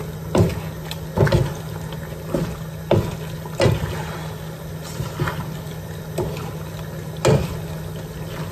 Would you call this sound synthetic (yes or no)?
no